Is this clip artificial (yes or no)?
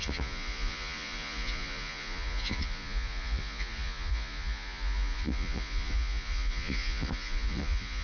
yes